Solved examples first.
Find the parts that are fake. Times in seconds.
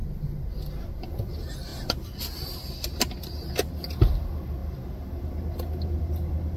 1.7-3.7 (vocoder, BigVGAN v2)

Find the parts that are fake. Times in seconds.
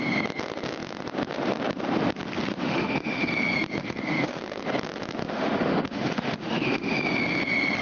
2.5-3.3 (autoencoder, DAC-VAE); 3.8-4.4; 5.2-6.9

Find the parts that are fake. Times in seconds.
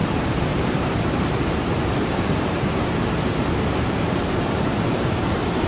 0.0-5.7 (vocoder, BigVGAN v2)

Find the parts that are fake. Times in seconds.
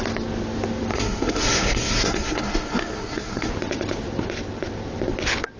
0.9-3.5 (codec, SNAC)